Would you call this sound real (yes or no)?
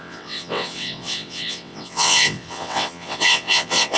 no